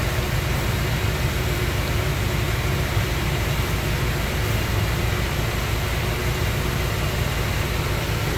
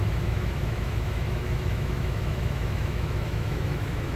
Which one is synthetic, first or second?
second